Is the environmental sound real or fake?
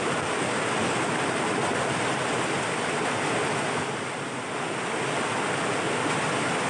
real